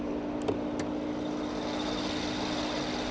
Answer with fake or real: real